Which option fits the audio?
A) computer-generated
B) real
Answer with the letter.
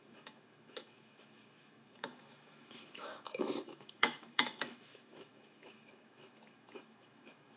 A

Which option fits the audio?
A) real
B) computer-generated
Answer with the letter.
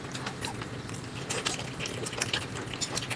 A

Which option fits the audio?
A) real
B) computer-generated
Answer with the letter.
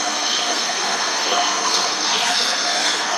B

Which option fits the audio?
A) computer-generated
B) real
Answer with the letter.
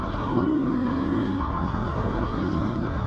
A